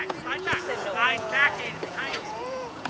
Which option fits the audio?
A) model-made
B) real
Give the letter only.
A